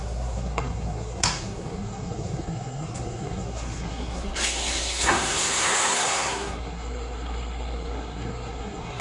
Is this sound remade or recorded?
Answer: remade